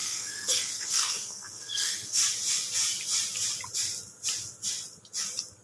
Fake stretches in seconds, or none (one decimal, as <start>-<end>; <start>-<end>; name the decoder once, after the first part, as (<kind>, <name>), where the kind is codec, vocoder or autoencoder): 0.0-2.2 (codec, SNAC)